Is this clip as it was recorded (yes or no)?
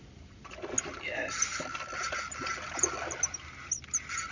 yes